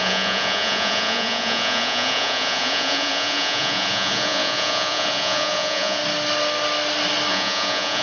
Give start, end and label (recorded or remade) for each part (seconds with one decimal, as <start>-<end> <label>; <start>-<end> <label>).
0.0-6.0 remade; 6.0-7.3 recorded; 7.3-8.0 remade